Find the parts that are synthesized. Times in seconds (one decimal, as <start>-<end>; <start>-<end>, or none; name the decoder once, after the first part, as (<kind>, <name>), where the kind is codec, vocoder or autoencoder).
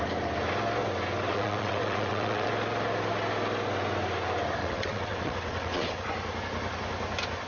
1.3-2.5 (vocoder, WaveNeXt); 4.6-6.0